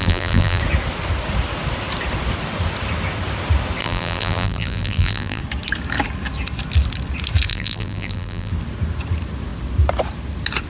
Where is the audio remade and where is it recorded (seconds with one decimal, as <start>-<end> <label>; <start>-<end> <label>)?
0.0-0.6 remade; 0.6-3.8 recorded; 3.8-5.4 remade; 5.4-7.5 recorded; 7.5-8.5 remade; 8.5-10.7 recorded